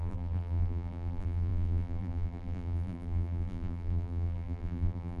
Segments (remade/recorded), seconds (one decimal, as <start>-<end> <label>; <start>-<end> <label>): 0.0-5.2 remade